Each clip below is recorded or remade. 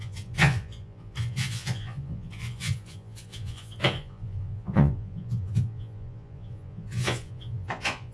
remade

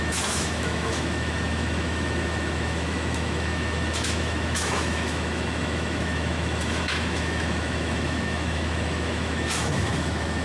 remade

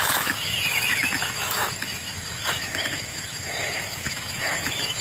remade